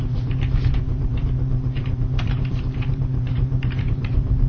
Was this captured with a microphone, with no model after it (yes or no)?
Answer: no